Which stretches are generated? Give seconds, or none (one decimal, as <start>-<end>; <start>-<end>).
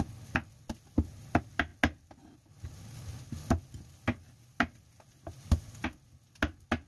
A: none